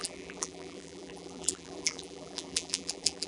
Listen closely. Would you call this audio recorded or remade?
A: remade